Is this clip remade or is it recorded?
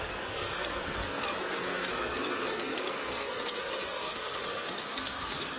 remade